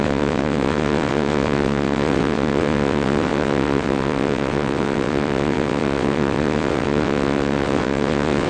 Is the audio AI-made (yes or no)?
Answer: yes